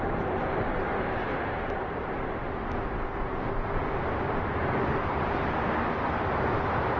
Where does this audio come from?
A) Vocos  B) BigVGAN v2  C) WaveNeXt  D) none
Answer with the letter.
D